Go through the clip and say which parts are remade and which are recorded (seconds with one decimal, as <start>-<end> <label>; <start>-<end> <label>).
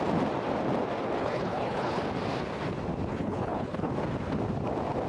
0.0-1.2 recorded; 1.2-2.0 remade; 2.0-3.1 recorded; 3.1-3.9 remade; 3.9-5.1 recorded